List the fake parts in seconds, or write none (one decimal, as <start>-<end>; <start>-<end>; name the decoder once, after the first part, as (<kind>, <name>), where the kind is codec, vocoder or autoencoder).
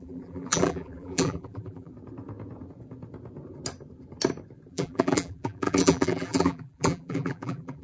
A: 0.0-1.9 (vocoder, BigVGAN v2); 4.7-7.8